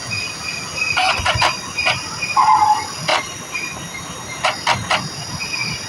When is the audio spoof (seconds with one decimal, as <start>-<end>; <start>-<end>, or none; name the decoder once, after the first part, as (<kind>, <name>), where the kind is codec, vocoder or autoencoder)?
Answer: 1.0-1.6 (vocoder, BigVGAN v2); 3.1-4.0